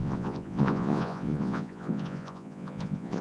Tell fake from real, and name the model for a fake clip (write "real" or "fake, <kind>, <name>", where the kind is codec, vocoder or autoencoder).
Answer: fake, vocoder, Vocos